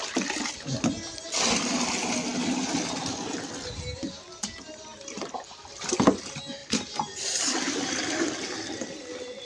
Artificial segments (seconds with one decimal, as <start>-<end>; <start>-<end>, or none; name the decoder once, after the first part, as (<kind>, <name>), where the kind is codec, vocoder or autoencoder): none